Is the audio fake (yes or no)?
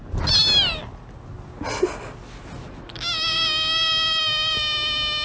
no